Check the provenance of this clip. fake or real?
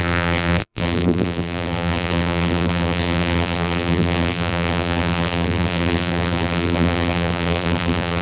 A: fake